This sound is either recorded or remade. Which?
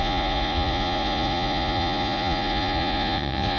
remade